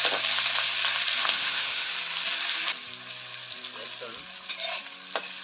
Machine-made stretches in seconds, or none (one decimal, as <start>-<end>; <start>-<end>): 1.2-1.9